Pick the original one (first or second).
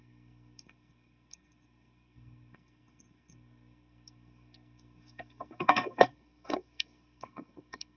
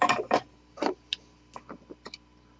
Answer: second